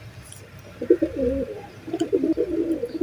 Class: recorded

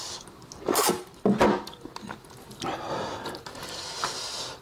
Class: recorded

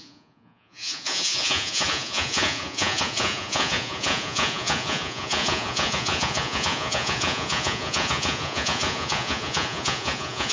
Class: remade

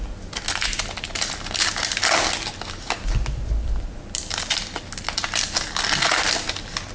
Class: recorded